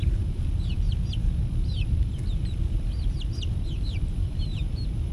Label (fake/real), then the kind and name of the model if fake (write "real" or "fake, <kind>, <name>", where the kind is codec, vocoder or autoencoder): fake, vocoder, BigVGAN v2